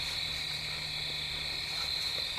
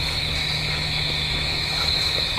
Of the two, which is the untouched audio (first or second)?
first